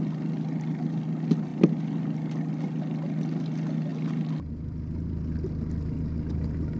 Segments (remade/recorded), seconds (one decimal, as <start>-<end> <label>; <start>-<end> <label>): 0.0-6.8 recorded

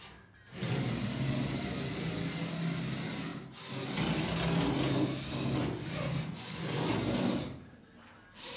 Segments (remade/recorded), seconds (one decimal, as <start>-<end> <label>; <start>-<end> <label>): 0.0-5.6 recorded; 5.6-6.9 remade; 6.9-8.6 recorded